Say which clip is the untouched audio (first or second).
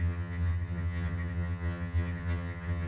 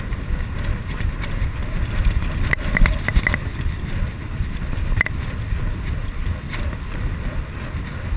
second